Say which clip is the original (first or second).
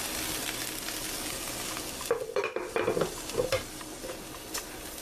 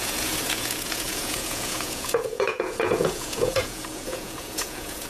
first